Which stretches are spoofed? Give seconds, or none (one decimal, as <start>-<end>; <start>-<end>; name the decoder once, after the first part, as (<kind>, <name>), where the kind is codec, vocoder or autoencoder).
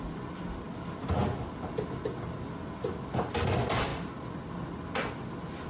none